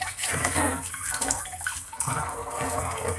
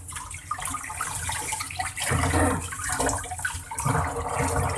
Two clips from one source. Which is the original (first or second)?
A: second